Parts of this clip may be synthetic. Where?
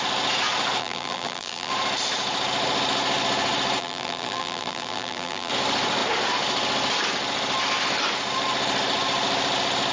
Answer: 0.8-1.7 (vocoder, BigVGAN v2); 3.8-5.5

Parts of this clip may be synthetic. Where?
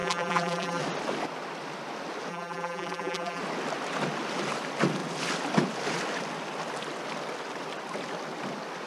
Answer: 0.0-0.8 (vocoder, BigVGAN v2); 2.3-3.4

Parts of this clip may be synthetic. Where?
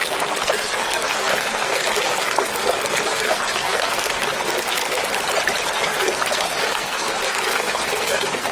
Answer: 0.0-5.0 (codec, SNAC); 5.7-8.5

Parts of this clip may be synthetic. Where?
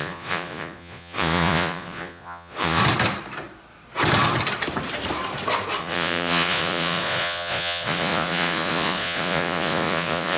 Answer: 0.0-2.8 (vocoder, Vocos); 5.8-10.4